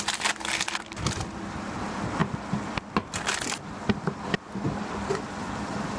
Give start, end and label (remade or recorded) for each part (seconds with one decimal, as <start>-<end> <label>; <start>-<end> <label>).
0.0-6.0 recorded

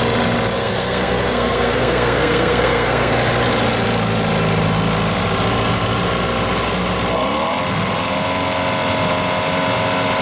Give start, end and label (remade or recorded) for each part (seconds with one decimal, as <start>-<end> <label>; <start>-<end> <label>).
0.0-0.6 recorded; 0.6-3.1 remade; 3.1-10.2 recorded

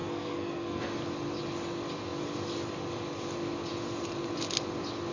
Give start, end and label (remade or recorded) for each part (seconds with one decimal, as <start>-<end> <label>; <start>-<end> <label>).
0.0-0.8 remade; 0.8-5.1 recorded

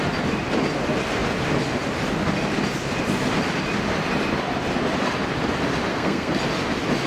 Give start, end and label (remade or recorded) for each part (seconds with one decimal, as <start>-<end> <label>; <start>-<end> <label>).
0.0-5.9 recorded; 5.9-6.4 remade; 6.4-7.1 recorded

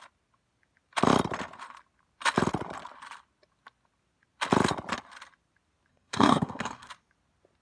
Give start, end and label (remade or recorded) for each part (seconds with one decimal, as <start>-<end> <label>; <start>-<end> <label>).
0.0-5.9 recorded; 5.9-6.9 remade; 6.9-7.6 recorded

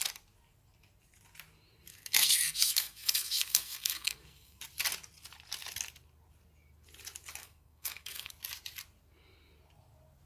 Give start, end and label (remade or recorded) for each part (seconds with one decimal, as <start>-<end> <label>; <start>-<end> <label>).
0.0-1.9 recorded; 1.9-4.6 remade; 4.6-7.4 recorded; 7.4-8.3 remade; 8.3-10.3 recorded

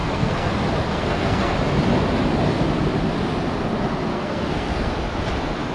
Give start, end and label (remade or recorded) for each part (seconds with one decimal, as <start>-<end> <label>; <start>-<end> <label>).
0.0-0.5 remade; 0.5-0.9 recorded; 0.9-1.5 remade; 1.5-4.1 recorded; 4.1-4.9 remade; 4.9-5.7 recorded

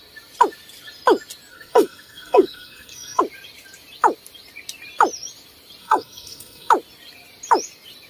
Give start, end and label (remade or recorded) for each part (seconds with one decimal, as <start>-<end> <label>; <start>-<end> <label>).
0.0-1.5 recorded; 1.5-3.2 remade; 3.2-5.8 recorded; 5.8-6.7 remade; 6.7-8.1 recorded